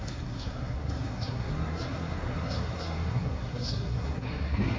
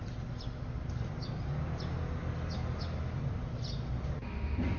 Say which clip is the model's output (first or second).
first